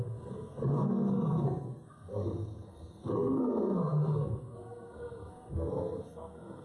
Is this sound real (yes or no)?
no